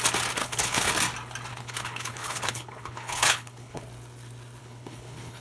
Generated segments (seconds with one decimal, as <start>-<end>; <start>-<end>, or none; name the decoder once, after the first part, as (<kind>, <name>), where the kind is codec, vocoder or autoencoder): 0.4-0.9 (codec, HILCodec); 1.5-3.8; 4.6-5.4